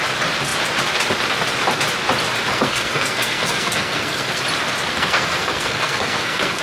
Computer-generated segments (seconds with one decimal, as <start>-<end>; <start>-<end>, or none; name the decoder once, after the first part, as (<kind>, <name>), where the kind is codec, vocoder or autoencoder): 2.5-4.4 (codec, SNAC); 4.9-6.6

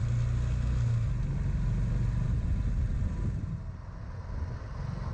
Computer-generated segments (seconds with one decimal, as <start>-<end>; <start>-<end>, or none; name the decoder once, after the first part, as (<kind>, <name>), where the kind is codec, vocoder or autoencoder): none

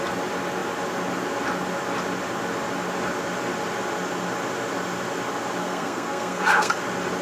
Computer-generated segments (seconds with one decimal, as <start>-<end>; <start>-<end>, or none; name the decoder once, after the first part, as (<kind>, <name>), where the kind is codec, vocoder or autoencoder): 5.6-6.8 (codec, SNAC)

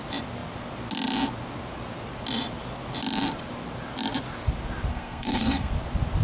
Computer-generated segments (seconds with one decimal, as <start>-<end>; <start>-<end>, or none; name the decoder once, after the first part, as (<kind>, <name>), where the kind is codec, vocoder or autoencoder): 4.9-5.7 (codec, SNAC)

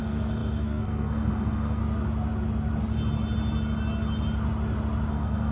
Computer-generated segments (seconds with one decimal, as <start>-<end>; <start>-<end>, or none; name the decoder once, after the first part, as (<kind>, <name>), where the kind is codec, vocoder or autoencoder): 0.0-1.8 (codec, SNAC); 5.1-5.5

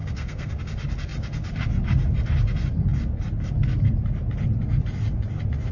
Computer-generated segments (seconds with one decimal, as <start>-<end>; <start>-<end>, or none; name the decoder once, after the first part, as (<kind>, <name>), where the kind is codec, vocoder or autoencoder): 0.0-0.5 (codec, SNAC)

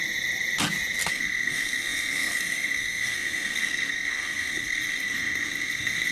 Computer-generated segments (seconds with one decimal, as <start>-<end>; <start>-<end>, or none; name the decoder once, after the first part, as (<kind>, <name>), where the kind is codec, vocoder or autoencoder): 1.1-6.1 (codec, SNAC)